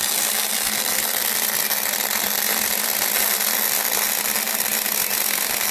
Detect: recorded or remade recorded